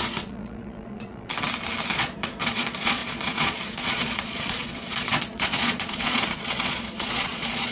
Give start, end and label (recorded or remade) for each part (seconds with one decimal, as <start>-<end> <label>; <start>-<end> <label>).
0.0-1.3 remade; 1.3-1.9 recorded; 1.9-7.7 remade

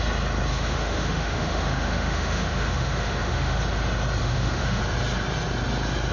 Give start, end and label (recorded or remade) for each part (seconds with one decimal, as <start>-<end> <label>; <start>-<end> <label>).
0.0-0.5 recorded; 0.5-3.6 remade; 3.6-4.2 recorded; 4.2-4.8 remade; 4.8-6.1 recorded

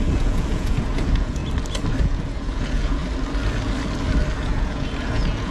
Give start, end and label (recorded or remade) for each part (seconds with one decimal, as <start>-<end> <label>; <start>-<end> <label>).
0.0-1.4 remade; 1.4-2.0 recorded; 2.0-3.0 remade; 3.0-4.4 recorded; 4.4-5.5 remade

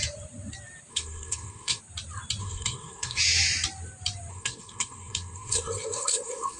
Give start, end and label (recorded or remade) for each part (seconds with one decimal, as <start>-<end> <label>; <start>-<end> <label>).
0.0-0.9 recorded; 0.9-1.8 remade; 1.8-2.4 recorded; 2.4-3.2 remade; 3.2-4.3 recorded; 4.3-6.6 remade

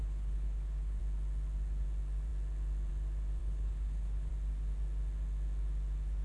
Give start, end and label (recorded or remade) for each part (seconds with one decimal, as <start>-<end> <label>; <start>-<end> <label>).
0.0-1.0 remade; 1.0-3.4 recorded; 3.4-4.3 remade; 4.3-6.2 recorded

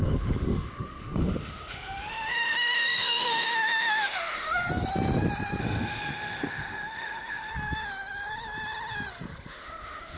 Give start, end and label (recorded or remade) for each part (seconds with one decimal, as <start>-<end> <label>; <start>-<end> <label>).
0.0-4.6 remade; 4.6-5.6 recorded; 5.6-7.5 remade; 7.5-9.5 recorded; 9.5-10.2 remade

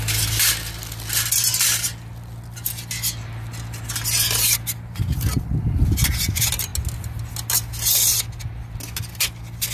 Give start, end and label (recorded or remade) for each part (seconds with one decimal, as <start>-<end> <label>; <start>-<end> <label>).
0.0-9.7 recorded